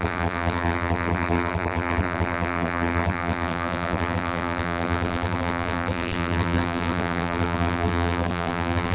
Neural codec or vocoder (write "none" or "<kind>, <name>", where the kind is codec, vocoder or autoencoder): vocoder, BigVGAN v2